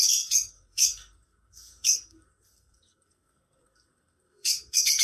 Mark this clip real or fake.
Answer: fake